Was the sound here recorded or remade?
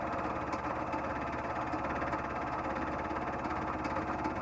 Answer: recorded